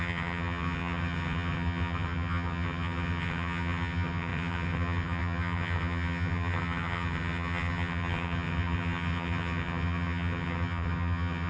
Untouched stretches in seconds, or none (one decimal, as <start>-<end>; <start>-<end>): none